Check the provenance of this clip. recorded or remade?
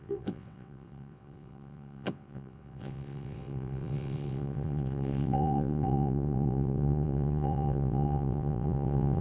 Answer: remade